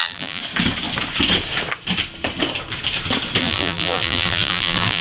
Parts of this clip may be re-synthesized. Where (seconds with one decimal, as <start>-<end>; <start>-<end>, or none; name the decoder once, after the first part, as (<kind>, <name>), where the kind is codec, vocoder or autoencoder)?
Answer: 0.0-0.4 (vocoder, BigVGAN v2); 3.4-5.0